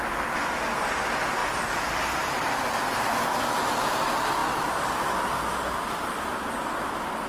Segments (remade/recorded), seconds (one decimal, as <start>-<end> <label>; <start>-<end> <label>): 0.0-7.3 recorded